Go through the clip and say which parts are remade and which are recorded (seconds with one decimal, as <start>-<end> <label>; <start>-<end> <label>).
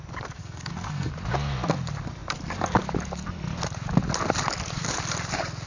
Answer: 0.0-0.4 recorded; 0.4-1.1 remade; 1.1-5.7 recorded